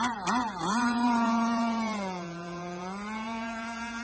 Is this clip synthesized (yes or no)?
yes